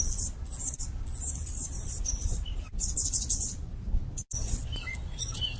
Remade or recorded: recorded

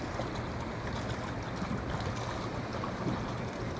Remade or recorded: recorded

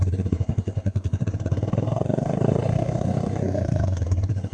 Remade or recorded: remade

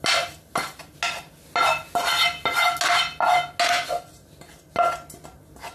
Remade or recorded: recorded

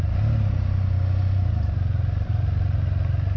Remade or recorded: recorded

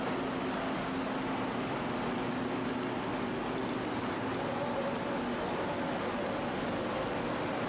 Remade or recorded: recorded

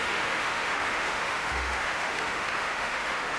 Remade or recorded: remade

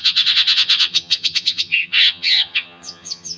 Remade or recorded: remade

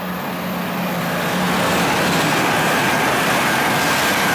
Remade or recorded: recorded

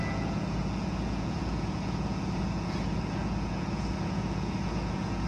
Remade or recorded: remade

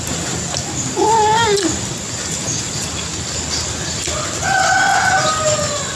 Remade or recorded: recorded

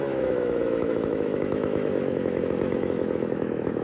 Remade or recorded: remade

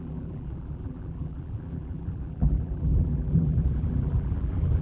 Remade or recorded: remade